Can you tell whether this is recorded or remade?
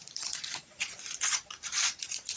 remade